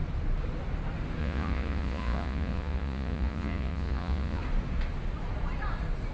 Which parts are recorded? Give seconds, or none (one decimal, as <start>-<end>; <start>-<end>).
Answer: 0.0-1.2; 4.4-6.1